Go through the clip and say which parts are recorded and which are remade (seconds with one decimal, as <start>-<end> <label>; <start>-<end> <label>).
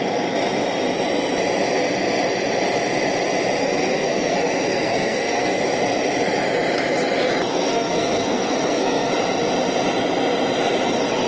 0.0-3.6 recorded; 3.6-5.6 remade; 5.6-7.5 recorded; 7.5-9.1 remade; 9.1-11.3 recorded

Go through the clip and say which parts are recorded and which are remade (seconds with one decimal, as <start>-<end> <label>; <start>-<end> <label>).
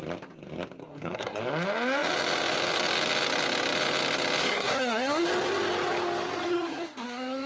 0.0-0.8 recorded; 0.8-1.4 remade; 1.4-4.4 recorded; 4.4-5.3 remade; 5.3-6.5 recorded; 6.5-7.5 remade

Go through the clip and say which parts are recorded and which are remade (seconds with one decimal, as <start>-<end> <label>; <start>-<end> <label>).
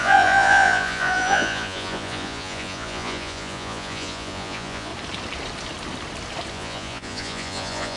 0.0-4.9 remade; 4.9-6.5 recorded; 6.5-8.0 remade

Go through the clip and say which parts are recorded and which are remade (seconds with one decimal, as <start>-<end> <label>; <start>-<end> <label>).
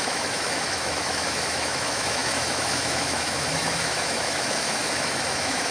0.0-5.7 remade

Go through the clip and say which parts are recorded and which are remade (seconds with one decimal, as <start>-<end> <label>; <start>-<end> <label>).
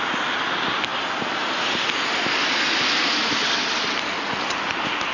0.0-5.1 recorded